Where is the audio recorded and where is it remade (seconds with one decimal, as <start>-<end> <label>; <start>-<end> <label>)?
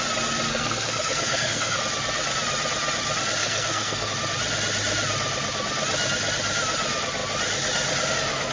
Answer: 0.0-0.5 recorded; 0.5-1.8 remade; 1.8-3.4 recorded; 3.4-4.1 remade; 4.1-8.5 recorded